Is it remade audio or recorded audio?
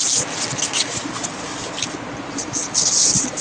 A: recorded